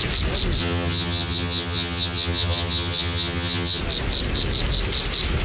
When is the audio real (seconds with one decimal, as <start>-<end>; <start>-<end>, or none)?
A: 0.0-0.6; 3.8-5.4